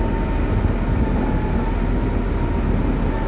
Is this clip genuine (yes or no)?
yes